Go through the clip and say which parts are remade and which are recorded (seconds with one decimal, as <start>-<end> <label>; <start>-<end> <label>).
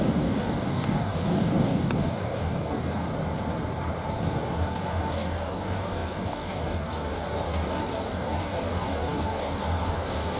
0.0-3.1 remade; 3.1-4.1 recorded; 4.1-10.4 remade